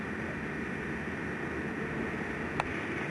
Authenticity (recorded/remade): recorded